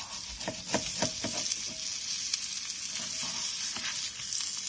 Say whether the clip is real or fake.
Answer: real